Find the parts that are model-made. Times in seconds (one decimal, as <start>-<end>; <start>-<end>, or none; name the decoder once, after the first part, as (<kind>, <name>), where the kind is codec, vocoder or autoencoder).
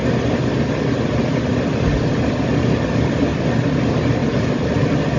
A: none